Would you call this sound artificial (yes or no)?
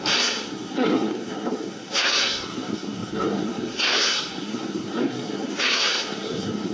yes